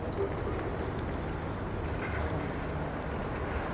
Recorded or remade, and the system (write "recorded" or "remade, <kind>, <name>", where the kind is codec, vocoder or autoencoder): recorded